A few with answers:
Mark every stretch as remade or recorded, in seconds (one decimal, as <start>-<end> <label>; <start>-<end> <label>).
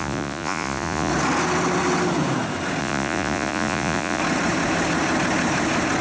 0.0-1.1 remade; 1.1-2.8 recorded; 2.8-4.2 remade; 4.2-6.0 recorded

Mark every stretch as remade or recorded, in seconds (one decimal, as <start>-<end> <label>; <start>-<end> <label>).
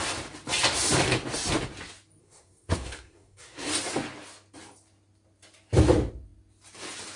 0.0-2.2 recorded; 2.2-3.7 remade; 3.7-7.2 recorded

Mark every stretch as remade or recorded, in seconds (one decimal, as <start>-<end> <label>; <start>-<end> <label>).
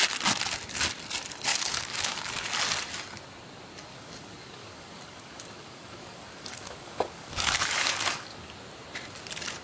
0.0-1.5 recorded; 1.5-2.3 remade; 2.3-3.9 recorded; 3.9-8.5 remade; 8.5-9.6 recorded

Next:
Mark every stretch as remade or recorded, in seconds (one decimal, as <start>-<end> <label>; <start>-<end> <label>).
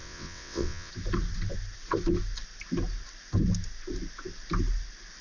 0.0-0.9 remade; 0.9-5.2 recorded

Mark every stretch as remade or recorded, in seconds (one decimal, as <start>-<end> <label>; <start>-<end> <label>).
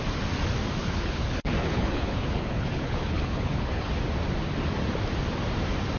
0.0-0.8 recorded; 0.8-3.9 remade; 3.9-6.0 recorded